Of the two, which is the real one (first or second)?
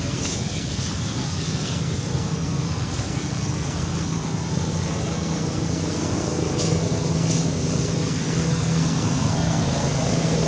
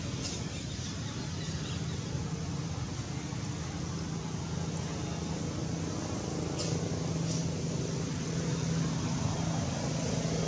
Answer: second